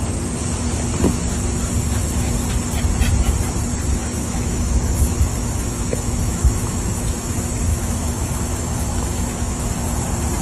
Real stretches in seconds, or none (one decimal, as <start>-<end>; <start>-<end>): 0.0-4.0; 7.3-7.7; 9.6-10.4